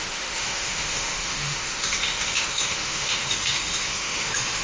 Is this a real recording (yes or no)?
no